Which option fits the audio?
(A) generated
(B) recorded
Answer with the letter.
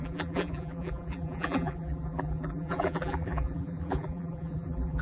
A